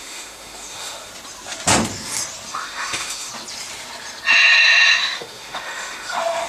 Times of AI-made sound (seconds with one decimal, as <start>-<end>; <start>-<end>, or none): 0.0-1.1; 2.5-3.3; 5.0-6.5